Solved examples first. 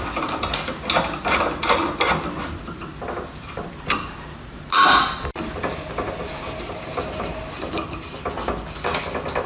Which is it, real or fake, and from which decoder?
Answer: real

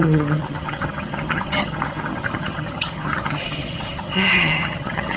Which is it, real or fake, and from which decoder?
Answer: fake, vocoder, HiFi-GAN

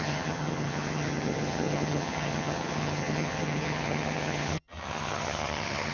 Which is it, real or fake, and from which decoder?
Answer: fake, vocoder, HiFi-GAN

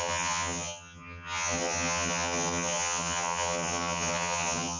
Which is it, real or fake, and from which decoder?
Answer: fake, vocoder, HiFi-GAN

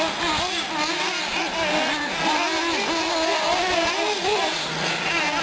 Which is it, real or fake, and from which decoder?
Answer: real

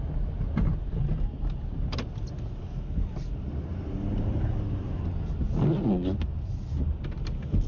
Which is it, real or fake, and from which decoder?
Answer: real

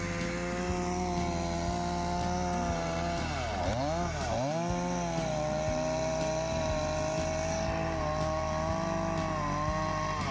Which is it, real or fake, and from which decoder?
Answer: real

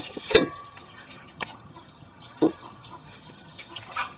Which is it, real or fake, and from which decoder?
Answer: fake, vocoder, HiFi-GAN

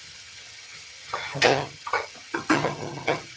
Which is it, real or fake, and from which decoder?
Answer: fake, vocoder, HiFi-GAN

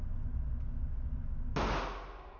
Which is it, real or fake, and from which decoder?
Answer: real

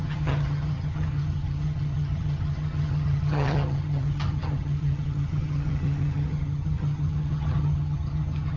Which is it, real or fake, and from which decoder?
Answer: fake, vocoder, HiFi-GAN